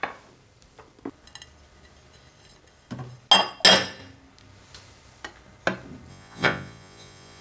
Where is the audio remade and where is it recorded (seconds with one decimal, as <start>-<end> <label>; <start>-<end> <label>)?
0.0-6.1 recorded; 6.1-7.4 remade